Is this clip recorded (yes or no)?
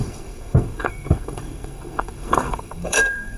no